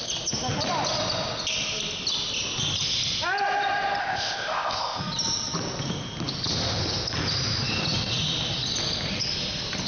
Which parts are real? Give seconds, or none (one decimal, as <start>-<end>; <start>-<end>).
0.0-4.0; 5.0-9.9